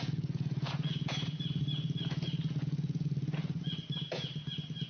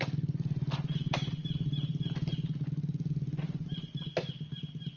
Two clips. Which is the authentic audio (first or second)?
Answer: second